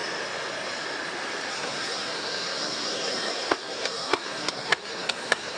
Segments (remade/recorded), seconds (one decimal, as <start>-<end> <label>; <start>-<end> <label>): 0.0-1.5 recorded; 1.5-5.6 remade